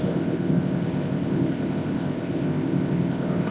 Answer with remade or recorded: remade